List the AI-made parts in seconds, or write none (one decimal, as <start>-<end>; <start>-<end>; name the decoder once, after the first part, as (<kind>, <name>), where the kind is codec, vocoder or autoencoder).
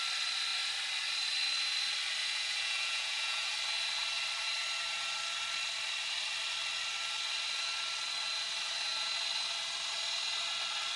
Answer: 2.2-3.5 (vocoder, Vocos)